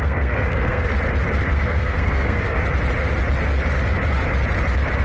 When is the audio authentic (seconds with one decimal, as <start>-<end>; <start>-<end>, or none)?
0.9-1.5; 2.6-5.0